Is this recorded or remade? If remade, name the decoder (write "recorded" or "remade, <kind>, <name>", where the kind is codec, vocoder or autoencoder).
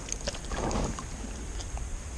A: recorded